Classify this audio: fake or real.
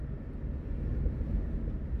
real